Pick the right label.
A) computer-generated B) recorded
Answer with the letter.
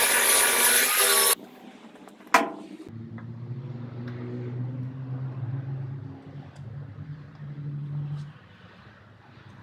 B